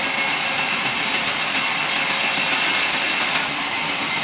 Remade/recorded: recorded